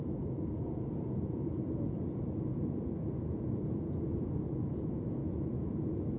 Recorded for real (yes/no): no